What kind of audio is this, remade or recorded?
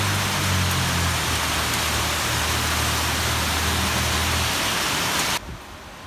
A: recorded